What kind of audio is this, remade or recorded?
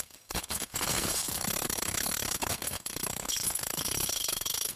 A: remade